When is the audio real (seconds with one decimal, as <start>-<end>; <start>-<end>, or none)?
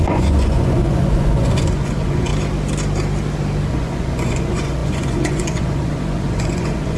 2.3-3.7